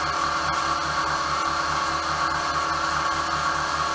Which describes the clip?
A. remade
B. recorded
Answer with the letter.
B